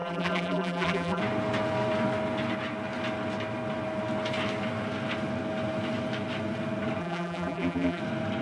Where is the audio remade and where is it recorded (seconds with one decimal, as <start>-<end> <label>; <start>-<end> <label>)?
0.0-1.2 remade; 1.2-7.0 recorded; 7.0-8.0 remade; 8.0-8.4 recorded